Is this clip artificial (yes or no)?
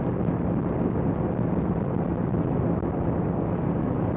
no